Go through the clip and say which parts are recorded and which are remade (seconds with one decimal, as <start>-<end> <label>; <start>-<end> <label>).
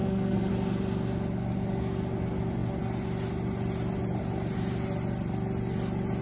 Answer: 0.0-0.5 remade; 0.5-6.2 recorded